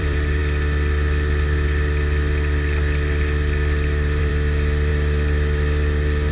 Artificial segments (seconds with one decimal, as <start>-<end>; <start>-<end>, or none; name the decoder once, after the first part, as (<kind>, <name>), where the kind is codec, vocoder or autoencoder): 0.0-0.4 (vocoder, BigVGAN v2); 4.2-4.9